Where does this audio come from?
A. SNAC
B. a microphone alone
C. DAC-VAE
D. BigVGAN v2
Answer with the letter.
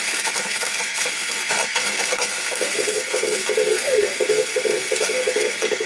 A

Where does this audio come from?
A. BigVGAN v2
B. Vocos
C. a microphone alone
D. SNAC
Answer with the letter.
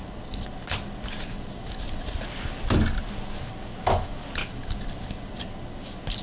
C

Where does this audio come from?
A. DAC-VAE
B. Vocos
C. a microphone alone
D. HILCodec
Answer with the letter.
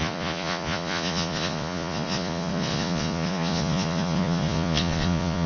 B